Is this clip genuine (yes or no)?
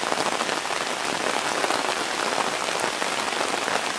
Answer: yes